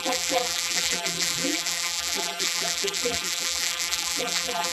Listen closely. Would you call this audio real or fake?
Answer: fake